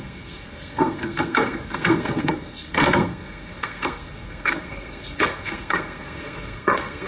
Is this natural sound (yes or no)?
no